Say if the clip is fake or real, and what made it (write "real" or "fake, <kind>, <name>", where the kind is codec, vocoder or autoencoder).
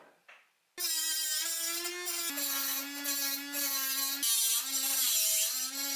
real